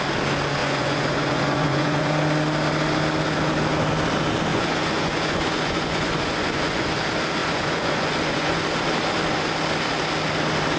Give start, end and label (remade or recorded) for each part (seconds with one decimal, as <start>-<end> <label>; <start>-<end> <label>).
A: 0.0-0.6 recorded; 0.6-2.2 remade; 2.2-4.5 recorded; 4.5-7.0 remade; 7.0-7.4 recorded; 7.4-8.6 remade; 8.6-10.8 recorded